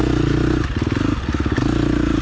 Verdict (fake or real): real